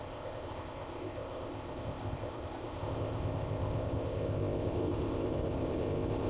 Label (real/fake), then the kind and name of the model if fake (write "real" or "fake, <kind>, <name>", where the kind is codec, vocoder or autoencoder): fake, codec, ZipCodec